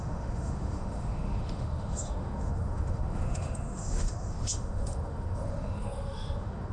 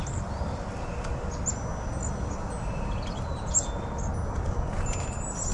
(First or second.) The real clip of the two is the second